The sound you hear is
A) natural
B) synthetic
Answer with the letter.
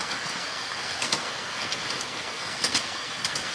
B